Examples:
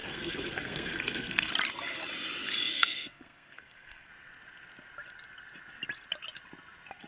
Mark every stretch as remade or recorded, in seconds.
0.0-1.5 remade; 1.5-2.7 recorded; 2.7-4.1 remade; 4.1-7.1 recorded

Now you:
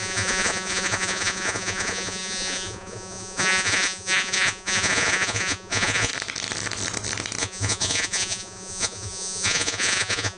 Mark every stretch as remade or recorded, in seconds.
0.0-6.1 remade; 6.1-7.4 recorded; 7.4-10.4 remade